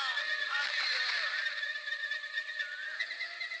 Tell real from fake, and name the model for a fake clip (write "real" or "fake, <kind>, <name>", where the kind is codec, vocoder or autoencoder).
fake, vocoder, BigVGAN v2